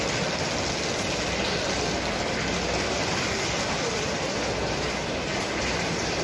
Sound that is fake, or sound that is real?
real